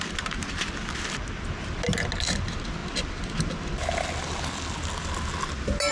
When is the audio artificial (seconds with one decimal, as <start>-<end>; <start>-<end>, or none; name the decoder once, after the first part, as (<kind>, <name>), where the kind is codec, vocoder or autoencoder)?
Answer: none